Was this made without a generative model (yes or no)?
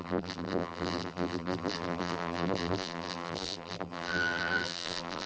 no